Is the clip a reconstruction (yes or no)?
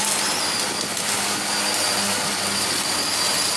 no